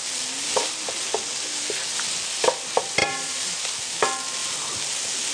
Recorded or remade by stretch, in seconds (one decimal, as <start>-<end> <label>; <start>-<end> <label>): 0.0-3.0 recorded; 3.0-3.6 remade; 3.6-4.4 recorded; 4.4-5.3 remade